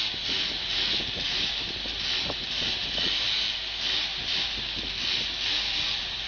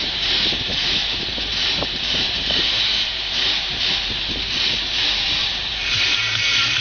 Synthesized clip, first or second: second